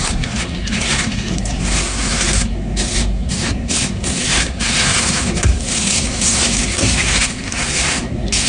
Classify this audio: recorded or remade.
remade